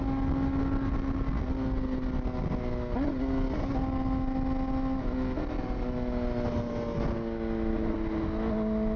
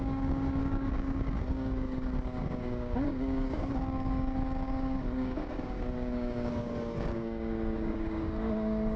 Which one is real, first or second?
first